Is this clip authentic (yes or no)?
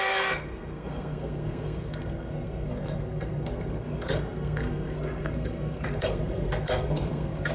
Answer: no